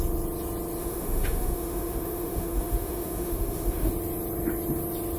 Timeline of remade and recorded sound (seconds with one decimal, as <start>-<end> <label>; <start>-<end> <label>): 0.0-0.8 recorded; 0.8-3.9 remade; 3.9-5.2 recorded